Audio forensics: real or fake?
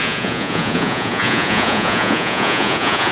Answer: fake